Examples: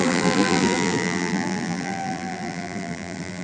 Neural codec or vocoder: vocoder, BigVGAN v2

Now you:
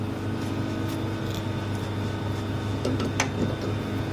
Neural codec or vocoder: none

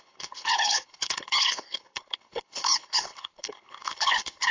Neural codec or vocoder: codec, HILCodec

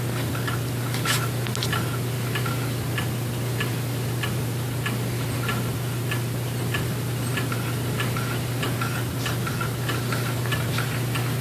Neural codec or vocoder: none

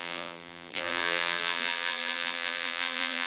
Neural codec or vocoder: vocoder, BigVGAN v2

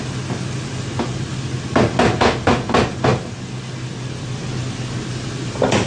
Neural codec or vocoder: none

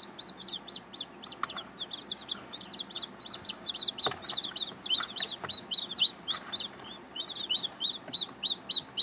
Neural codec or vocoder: none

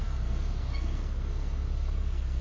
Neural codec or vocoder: codec, SNAC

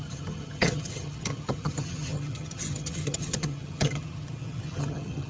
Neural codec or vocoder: vocoder, HiFi-GAN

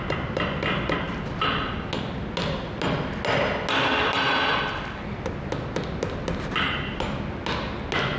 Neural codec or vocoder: none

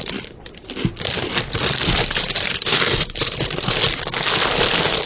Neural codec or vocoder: none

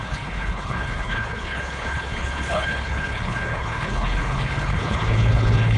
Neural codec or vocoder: codec, HILCodec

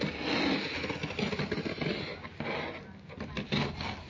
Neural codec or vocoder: none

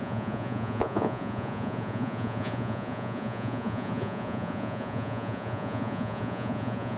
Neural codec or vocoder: vocoder, Vocos